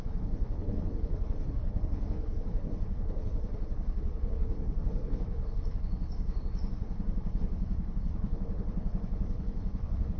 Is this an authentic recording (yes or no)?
no